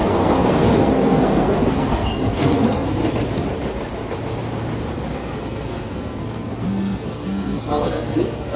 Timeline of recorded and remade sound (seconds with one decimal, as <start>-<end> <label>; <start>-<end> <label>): 0.0-3.0 remade; 3.0-5.1 recorded; 5.1-8.6 remade